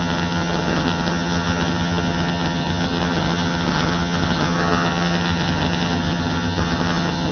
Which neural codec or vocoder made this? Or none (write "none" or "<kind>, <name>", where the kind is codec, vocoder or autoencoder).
vocoder, HiFi-GAN